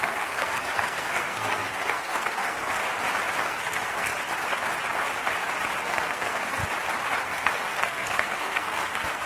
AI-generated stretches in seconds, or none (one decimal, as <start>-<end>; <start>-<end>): 0.0-2.8; 3.4-4.1; 5.8-6.6; 7.2-9.3